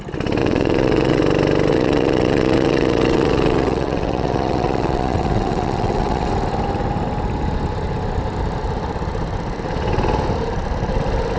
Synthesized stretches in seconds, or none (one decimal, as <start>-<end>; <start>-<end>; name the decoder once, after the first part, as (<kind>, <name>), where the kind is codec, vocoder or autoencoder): 0.4-1.2 (vocoder, WaveNeXt); 1.7-6.3